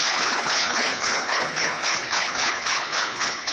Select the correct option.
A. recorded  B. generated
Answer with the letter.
B